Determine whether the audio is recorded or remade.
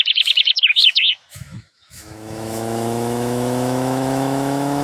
remade